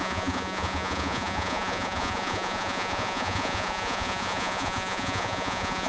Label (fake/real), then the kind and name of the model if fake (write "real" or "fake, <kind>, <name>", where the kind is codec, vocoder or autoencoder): fake, vocoder, Vocos